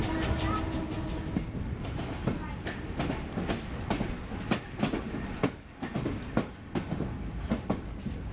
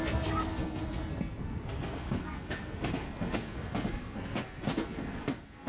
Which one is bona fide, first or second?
first